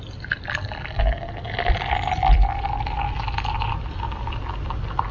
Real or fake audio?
real